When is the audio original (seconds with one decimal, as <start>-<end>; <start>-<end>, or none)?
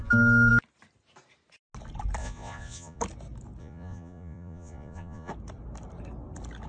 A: 0.0-2.2; 3.0-3.6; 5.3-6.7